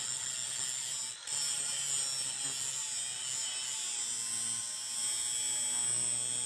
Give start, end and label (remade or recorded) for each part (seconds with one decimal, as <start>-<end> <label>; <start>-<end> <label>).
0.0-6.5 recorded